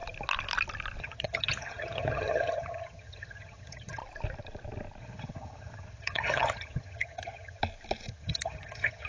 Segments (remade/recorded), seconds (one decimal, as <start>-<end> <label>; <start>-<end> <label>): 0.0-1.0 recorded; 1.0-4.0 remade; 4.0-5.0 recorded; 5.0-7.6 remade; 7.6-8.1 recorded; 8.1-9.1 remade